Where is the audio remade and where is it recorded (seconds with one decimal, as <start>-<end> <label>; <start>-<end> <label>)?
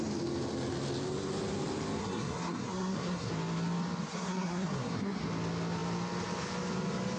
0.0-2.0 recorded; 2.0-3.3 remade; 3.3-4.1 recorded; 4.1-5.2 remade; 5.2-7.2 recorded